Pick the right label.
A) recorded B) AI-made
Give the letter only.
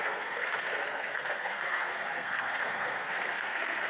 B